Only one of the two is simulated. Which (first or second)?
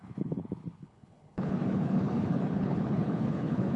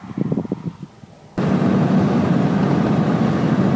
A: first